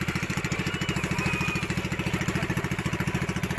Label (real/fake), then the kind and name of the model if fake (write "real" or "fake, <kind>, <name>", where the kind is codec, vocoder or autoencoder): real